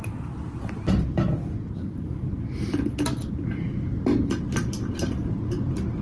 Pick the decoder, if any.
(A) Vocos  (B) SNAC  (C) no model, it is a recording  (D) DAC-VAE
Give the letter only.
C